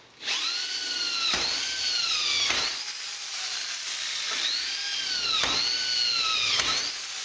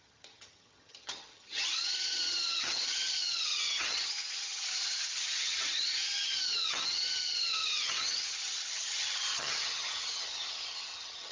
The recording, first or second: first